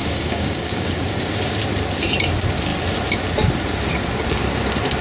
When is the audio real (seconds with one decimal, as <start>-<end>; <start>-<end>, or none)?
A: 1.0-5.0